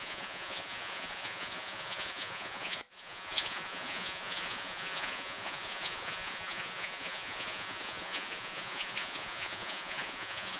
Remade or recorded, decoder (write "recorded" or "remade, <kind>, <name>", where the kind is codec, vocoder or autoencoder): remade, vocoder, Vocos